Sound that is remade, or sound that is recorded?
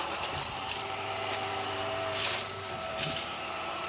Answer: remade